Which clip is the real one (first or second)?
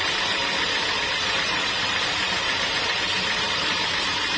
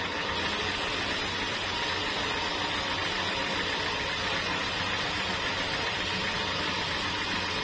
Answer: second